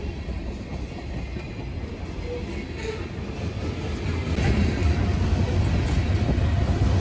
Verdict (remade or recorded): recorded